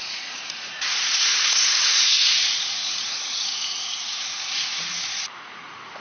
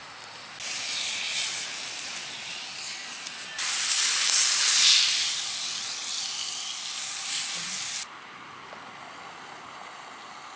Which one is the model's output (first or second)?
first